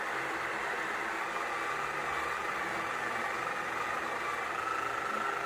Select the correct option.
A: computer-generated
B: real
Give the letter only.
B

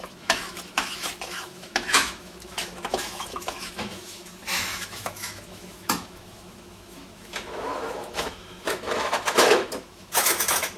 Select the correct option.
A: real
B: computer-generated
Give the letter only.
B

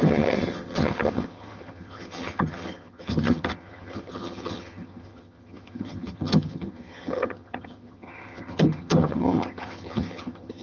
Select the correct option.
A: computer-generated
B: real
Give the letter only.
A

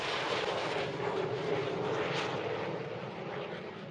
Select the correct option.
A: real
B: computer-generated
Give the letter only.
A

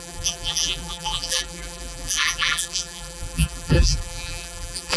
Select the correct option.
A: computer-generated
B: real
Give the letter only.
A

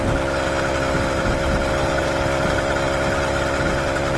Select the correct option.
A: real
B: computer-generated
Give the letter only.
A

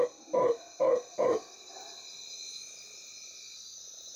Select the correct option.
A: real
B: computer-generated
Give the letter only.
A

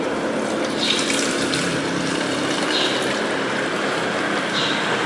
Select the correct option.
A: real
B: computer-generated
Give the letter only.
B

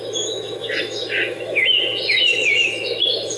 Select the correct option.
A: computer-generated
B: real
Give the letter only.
A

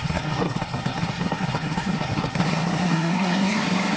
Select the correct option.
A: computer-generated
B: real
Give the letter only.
A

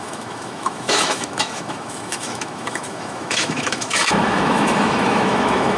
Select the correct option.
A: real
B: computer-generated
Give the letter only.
B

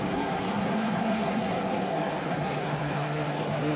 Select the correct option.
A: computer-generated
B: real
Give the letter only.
A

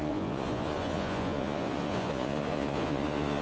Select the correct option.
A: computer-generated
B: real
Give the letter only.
A